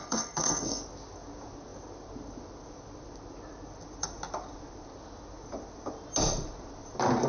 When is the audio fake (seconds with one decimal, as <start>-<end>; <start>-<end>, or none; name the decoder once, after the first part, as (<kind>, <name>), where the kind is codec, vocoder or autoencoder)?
0.0-0.8 (codec, SNAC)